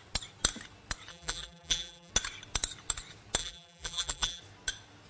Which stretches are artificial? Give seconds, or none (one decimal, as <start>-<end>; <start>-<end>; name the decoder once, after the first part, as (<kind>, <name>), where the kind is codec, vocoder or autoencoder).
1.1-2.1 (vocoder, BigVGAN v2); 3.4-4.4